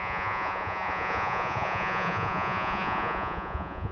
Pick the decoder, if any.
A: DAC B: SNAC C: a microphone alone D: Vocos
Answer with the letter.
D